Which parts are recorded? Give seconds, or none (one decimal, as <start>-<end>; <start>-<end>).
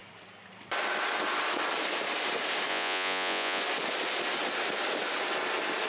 0.0-2.7; 3.6-5.9